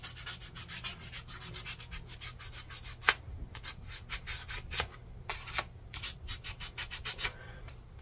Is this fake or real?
real